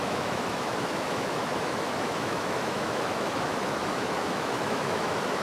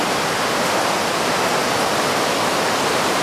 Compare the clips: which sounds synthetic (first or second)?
first